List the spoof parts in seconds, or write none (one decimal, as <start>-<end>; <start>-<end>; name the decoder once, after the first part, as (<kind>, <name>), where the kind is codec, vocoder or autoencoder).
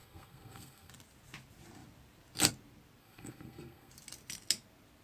0.0-0.9 (codec, SNAC); 3.0-3.9